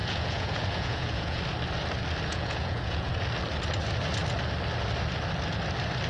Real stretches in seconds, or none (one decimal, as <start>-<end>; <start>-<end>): 1.4-2.3; 3.1-6.1